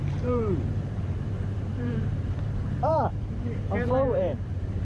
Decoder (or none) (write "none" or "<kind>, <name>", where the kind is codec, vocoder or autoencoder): vocoder, BigVGAN v2